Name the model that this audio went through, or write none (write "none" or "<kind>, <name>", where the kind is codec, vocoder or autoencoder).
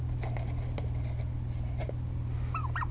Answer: none